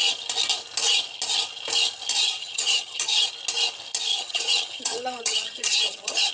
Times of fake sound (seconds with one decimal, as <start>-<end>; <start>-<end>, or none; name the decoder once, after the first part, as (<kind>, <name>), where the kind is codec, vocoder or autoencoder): 2.4-3.3 (vocoder, HiFi-GAN); 4.1-6.3